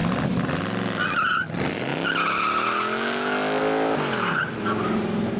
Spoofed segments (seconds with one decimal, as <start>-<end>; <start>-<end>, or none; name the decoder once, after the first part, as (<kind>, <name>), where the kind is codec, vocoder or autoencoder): none